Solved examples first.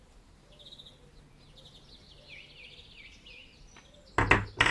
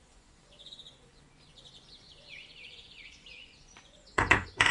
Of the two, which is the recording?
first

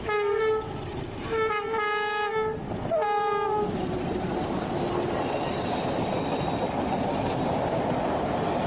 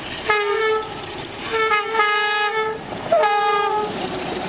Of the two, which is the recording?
first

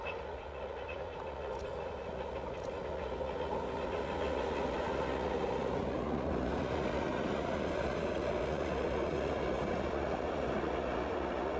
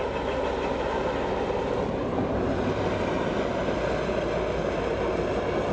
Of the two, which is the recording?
second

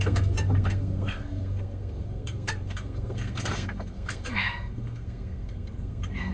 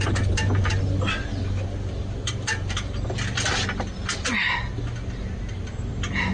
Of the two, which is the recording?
second